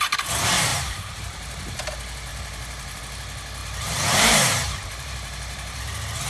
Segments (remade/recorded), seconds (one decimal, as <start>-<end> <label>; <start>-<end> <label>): 0.0-0.7 recorded; 0.7-1.8 remade; 1.8-2.3 recorded; 2.3-3.0 remade; 3.0-3.6 recorded; 3.6-5.8 remade; 5.8-6.3 recorded